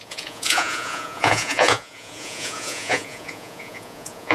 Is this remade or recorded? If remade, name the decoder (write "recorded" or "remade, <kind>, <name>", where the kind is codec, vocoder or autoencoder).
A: remade, vocoder, Vocos